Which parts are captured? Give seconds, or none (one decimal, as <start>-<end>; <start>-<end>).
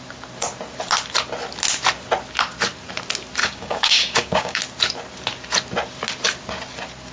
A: 0.0-3.4; 4.6-7.1